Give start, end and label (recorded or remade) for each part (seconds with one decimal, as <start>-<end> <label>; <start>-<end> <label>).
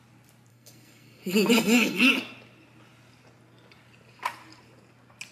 0.0-0.5 recorded; 0.5-2.1 remade; 2.1-5.3 recorded